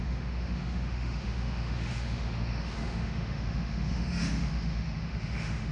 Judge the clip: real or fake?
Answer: fake